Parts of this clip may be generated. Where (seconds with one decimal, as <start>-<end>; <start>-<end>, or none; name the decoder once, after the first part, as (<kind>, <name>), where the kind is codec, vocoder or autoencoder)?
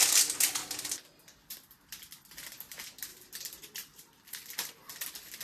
3.1-4.7 (vocoder, BigVGAN v2)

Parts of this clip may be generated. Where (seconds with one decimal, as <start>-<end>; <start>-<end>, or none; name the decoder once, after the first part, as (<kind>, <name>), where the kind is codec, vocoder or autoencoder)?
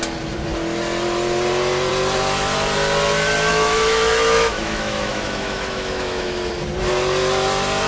3.5-6.5 (autoencoder, DAC-VAE)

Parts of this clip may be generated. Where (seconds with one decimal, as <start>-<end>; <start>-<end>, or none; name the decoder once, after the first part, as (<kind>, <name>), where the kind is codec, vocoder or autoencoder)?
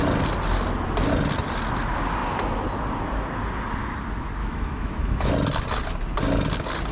4.4-5.3 (autoencoder, DAC-VAE)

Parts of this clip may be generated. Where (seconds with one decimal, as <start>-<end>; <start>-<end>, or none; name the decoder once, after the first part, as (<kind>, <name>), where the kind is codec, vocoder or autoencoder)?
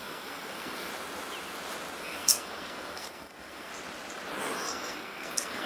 0.0-0.9 (codec, SNAC); 2.0-3.7; 4.4-5.7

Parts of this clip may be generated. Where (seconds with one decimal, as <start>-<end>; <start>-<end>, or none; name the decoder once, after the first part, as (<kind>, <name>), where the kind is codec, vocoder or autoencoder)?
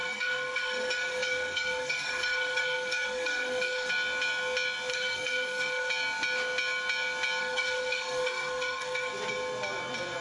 0.0-3.9 (codec, SNAC); 4.9-5.9; 7.4-9.1